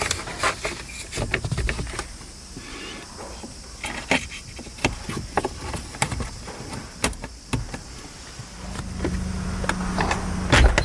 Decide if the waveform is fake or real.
real